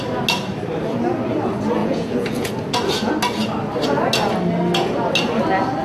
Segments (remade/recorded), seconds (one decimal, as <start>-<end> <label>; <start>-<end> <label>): 0.0-1.8 recorded; 1.8-2.5 remade; 2.5-5.8 recorded

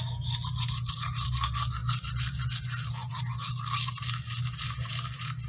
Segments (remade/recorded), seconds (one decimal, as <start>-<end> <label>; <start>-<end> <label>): 0.0-5.5 recorded

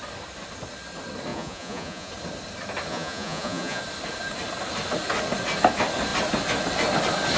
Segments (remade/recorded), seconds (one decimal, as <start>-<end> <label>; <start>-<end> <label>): 0.0-1.3 recorded; 1.3-2.1 remade; 2.1-2.9 recorded; 2.9-3.8 remade; 3.8-7.4 recorded

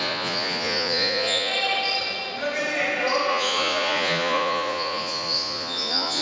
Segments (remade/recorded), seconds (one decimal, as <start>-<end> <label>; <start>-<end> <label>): 0.0-1.5 remade; 1.5-3.3 recorded; 3.3-6.2 remade

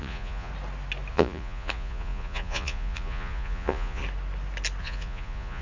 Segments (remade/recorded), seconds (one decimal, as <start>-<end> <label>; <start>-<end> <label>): 0.0-0.5 remade; 0.5-1.1 recorded; 1.1-4.0 remade; 4.0-4.8 recorded; 4.8-5.6 remade

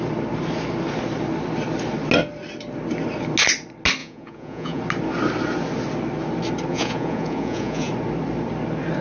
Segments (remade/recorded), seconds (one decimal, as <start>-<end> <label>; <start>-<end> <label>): 0.0-4.0 recorded; 4.0-4.8 remade; 4.8-6.7 recorded; 6.7-7.9 remade; 7.9-9.0 recorded